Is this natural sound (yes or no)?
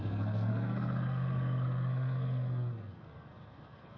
no